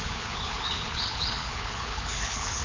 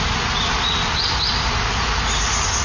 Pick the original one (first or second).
second